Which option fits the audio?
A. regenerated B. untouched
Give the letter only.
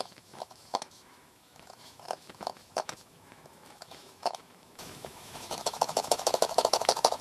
A